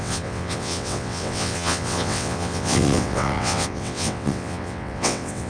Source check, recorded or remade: remade